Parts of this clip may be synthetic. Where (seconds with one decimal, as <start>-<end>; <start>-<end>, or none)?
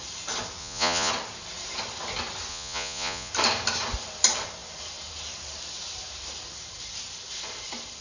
0.6-1.1; 2.5-3.3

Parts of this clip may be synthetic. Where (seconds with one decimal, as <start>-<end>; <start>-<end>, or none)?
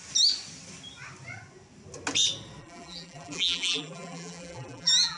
2.6-5.2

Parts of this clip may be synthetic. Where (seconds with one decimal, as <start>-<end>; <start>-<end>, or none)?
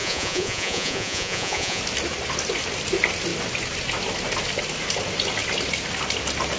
0.0-1.8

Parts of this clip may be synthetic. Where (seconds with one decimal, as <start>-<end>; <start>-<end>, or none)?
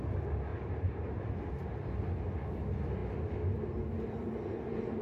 0.5-1.2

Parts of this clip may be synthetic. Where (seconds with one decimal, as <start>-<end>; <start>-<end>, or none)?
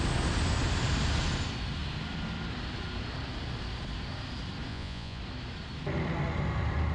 4.7-5.2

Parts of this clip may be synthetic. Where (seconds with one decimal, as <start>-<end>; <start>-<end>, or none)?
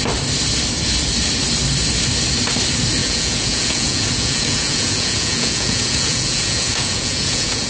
3.0-7.7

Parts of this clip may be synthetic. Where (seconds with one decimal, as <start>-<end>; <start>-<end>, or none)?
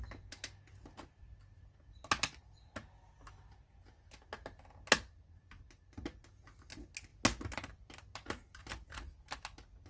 none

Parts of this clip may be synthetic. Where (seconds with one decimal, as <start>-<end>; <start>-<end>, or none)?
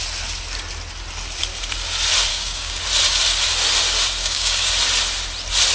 2.3-2.8; 4.2-4.7